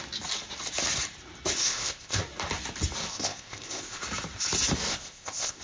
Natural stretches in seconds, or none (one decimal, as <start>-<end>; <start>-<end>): 0.0-1.6; 2.2-3.1; 4.0-4.9

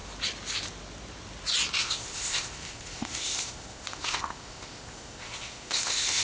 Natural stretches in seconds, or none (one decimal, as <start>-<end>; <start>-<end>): 0.0-1.8

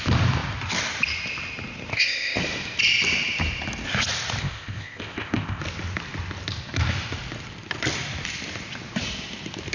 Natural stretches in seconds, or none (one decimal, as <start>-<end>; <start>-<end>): 0.0-1.9; 2.4-4.4; 5.6-9.7

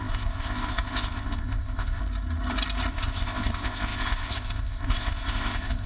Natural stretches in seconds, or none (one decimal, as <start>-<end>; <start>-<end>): 2.0-2.9

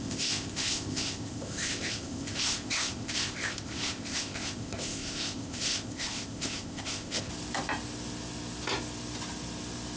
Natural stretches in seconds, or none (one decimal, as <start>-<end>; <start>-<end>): 7.3-10.0

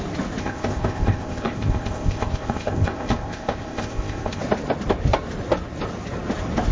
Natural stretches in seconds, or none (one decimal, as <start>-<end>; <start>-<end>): 0.0-0.4; 4.4-6.7